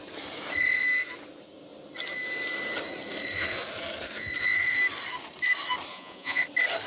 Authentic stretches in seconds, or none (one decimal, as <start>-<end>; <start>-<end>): 0.0-5.9; 6.4-6.9